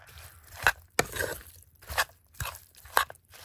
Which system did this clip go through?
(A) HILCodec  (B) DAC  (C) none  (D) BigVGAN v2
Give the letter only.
C